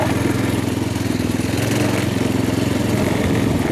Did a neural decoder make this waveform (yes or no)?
no